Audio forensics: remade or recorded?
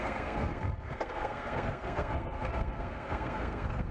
remade